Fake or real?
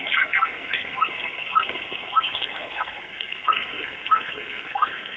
fake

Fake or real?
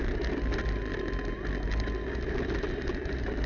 real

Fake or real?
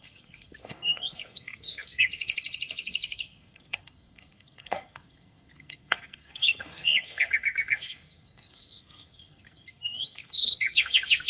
fake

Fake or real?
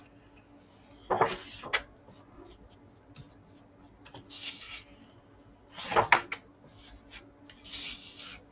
real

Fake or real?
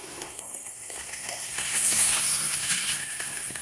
fake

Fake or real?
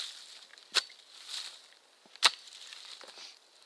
real